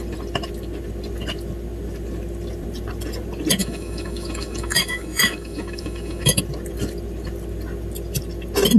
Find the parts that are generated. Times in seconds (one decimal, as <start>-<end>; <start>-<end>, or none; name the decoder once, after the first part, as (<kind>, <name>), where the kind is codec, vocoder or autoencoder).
3.6-6.4 (autoencoder, DAC-VAE)